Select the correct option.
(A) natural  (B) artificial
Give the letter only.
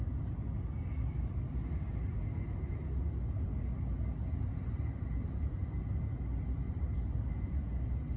A